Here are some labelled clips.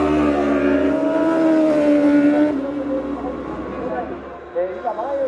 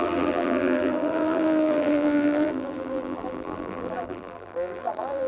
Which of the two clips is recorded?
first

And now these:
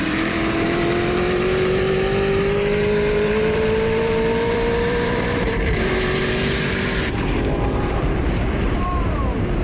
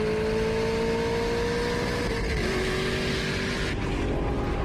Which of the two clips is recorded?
second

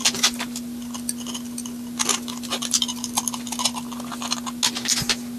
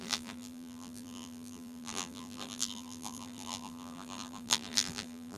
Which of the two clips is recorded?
first